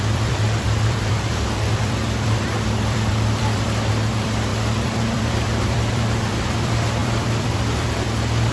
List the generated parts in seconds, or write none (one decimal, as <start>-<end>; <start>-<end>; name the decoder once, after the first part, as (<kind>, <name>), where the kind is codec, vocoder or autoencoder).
0.0-8.5 (vocoder, BigVGAN v2)